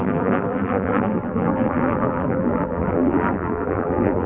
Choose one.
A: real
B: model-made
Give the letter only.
B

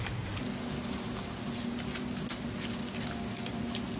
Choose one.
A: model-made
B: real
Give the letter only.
B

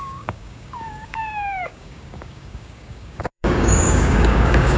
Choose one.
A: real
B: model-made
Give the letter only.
B